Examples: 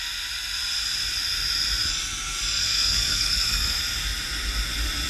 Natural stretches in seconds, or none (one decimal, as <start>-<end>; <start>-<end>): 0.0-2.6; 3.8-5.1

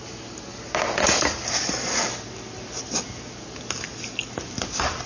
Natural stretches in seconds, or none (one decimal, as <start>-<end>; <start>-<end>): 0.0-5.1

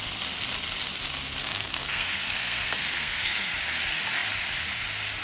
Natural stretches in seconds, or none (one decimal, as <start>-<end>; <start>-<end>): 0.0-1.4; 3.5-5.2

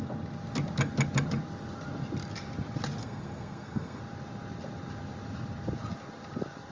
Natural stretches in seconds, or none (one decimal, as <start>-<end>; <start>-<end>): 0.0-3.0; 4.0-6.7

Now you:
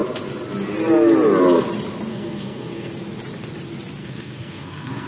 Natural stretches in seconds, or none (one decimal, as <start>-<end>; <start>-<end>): 0.0-2.1; 2.9-4.0

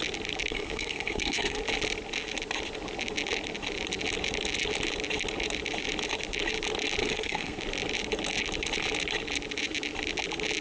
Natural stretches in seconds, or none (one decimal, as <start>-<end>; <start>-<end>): 0.0-0.5; 1.6-7.0; 7.6-10.6

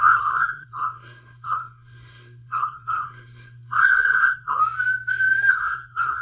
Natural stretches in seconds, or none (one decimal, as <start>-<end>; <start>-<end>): 4.6-5.5

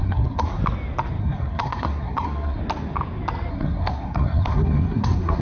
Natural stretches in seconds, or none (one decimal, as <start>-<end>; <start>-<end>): 0.6-1.2; 2.6-3.5